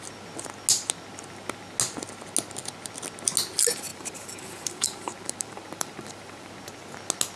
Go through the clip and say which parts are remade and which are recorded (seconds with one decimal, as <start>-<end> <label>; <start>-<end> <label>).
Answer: 0.0-3.9 recorded; 3.9-6.5 remade; 6.5-7.4 recorded